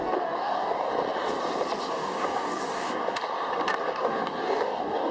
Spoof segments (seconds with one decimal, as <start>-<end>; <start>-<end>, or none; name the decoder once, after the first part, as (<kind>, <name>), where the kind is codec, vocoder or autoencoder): 0.0-0.9 (codec, DAC); 1.9-3.2; 3.8-5.1